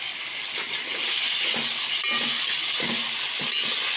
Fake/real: real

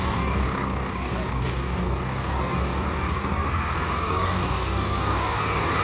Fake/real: fake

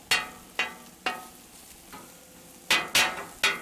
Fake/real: real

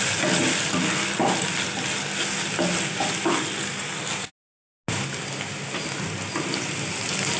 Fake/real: real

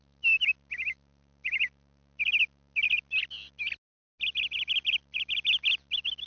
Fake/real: real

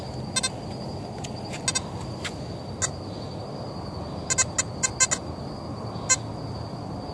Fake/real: real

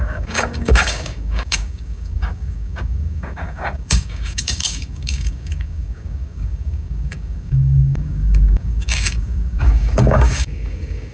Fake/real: fake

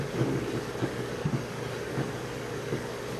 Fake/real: fake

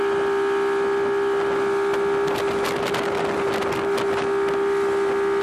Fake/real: real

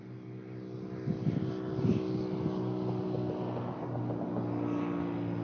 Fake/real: real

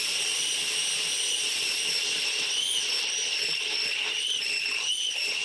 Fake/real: real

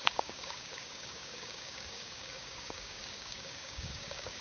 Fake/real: fake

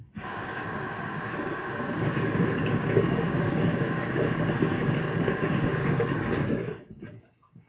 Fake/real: fake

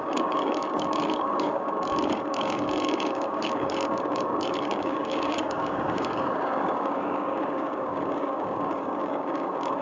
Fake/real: fake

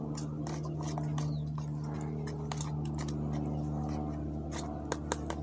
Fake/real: real